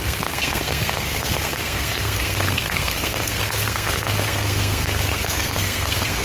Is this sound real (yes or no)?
no